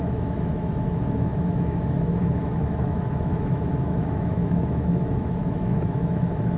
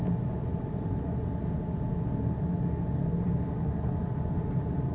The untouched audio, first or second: second